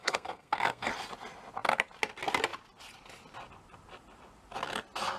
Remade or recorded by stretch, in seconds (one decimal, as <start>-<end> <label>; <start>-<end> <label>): 0.0-0.9 remade; 0.9-5.2 recorded